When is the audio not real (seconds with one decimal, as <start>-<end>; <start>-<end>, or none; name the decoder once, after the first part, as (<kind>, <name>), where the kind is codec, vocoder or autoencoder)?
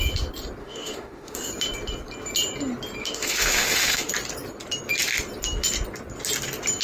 0.6-1.5 (autoencoder, DAC-VAE); 3.0-4.1